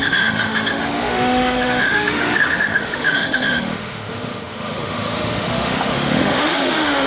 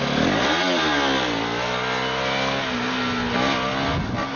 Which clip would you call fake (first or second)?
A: first